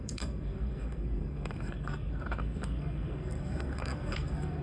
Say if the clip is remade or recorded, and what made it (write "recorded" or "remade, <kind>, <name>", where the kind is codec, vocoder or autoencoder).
remade, codec, SNAC